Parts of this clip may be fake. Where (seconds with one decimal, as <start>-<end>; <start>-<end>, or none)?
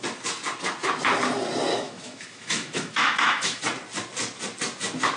1.7-3.6